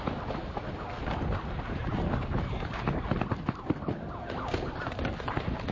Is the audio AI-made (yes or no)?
no